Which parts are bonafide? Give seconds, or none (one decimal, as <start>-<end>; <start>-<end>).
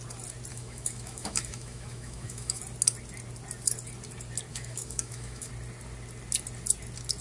0.0-0.5; 2.6-4.5; 5.5-7.2